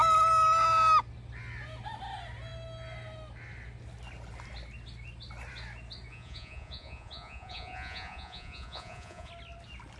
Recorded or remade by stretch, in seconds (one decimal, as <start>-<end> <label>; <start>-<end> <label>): 0.0-6.1 recorded; 6.1-9.3 remade; 9.3-10.0 recorded